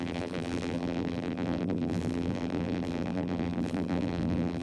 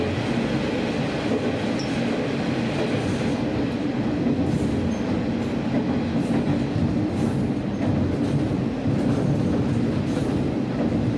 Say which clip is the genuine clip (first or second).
second